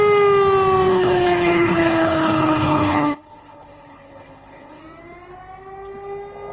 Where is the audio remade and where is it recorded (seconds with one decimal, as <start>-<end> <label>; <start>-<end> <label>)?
0.0-0.9 recorded; 0.9-4.8 remade; 4.8-6.5 recorded